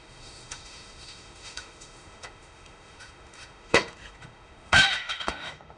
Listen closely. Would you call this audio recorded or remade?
remade